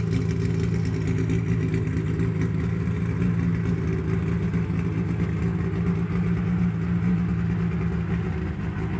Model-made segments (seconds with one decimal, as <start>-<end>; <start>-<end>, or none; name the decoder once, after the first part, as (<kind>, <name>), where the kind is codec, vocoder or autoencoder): none